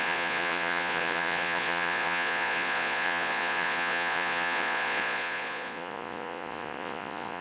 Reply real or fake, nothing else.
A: fake